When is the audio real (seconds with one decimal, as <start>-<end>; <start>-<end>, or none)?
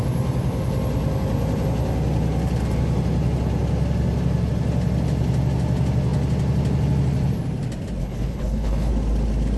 0.0-8.0; 8.9-9.6